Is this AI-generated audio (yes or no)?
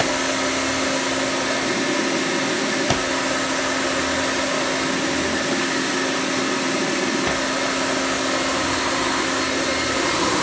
no